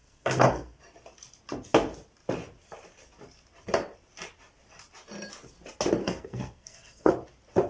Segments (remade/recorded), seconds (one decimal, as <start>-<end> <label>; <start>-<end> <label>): 0.0-0.8 remade; 0.8-6.0 recorded; 6.0-7.1 remade; 7.1-7.7 recorded